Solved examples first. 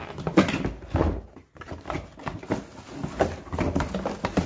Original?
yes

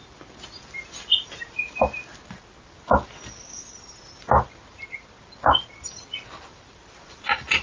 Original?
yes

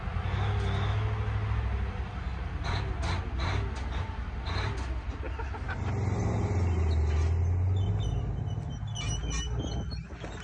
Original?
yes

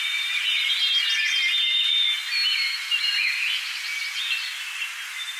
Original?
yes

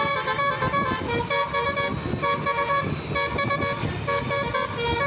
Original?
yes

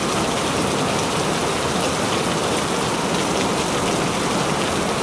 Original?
yes